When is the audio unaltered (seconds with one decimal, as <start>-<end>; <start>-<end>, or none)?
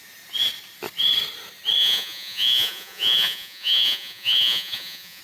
0.0-1.8